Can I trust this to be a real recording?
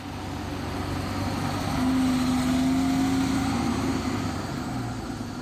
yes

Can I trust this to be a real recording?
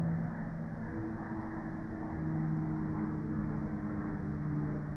yes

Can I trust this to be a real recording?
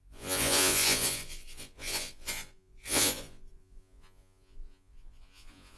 no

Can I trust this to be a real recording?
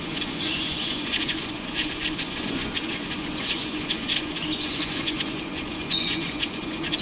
no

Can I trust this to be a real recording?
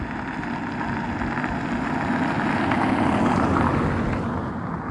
yes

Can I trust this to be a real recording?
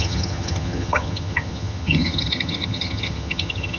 no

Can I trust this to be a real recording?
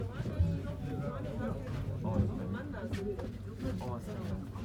yes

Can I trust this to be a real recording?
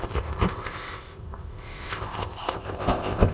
no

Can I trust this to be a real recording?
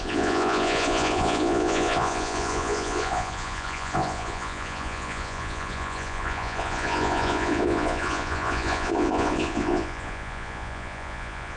no